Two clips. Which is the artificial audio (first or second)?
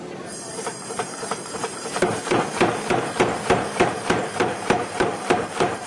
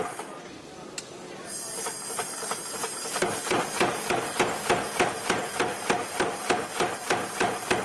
first